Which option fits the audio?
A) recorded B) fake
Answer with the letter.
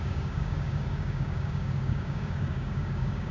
B